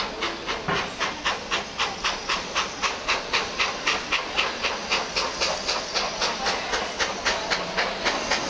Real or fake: real